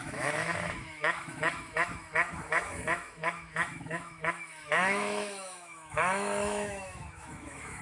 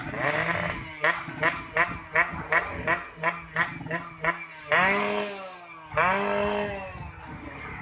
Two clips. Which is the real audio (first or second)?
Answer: second